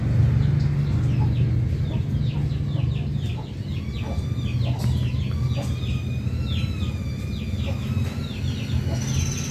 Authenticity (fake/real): real